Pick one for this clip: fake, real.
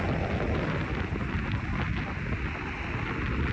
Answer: real